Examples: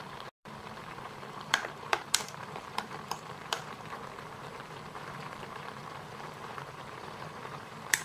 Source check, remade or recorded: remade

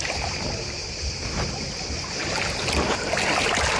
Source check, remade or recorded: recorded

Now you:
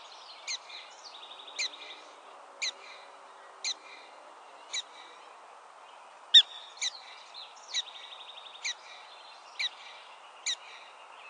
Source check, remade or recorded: recorded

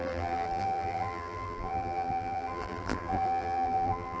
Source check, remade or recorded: remade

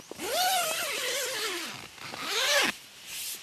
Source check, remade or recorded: recorded